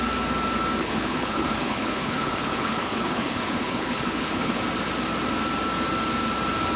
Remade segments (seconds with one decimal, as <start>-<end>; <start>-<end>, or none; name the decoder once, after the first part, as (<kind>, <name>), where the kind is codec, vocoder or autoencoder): 0.8-4.6 (codec, HILCodec)